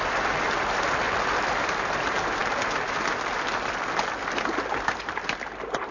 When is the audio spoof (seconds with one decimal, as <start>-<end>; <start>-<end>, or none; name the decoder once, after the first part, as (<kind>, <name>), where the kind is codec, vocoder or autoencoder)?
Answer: none